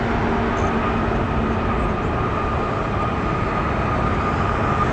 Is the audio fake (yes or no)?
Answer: no